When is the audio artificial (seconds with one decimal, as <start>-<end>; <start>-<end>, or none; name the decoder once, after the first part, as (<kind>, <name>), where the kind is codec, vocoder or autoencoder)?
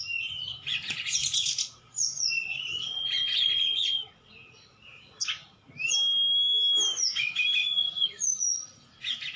0.5-5.7 (vocoder, Vocos); 7.6-9.4